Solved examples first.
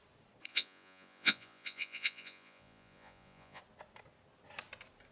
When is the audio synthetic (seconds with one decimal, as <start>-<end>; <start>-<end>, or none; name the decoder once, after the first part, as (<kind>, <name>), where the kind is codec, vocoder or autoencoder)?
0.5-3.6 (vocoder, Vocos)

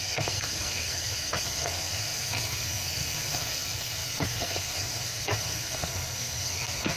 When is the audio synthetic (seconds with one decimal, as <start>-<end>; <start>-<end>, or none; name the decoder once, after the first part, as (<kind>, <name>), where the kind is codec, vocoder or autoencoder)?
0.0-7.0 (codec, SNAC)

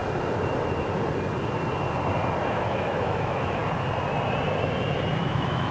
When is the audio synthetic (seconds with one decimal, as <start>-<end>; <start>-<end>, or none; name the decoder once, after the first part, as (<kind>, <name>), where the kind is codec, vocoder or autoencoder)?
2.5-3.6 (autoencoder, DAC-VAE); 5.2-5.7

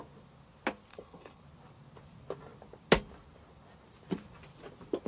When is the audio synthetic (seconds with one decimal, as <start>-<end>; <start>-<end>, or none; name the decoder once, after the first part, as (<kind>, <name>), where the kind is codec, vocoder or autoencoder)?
0.9-1.4 (codec, HILCodec)

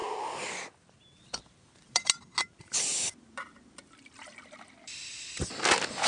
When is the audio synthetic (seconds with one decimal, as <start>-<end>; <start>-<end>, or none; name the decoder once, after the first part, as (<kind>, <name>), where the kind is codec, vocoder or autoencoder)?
0.0-2.2 (vocoder, BigVGAN v2); 2.9-5.3

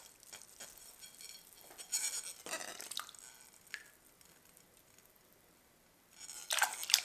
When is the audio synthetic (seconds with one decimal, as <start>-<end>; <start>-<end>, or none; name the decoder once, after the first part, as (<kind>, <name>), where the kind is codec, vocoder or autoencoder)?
none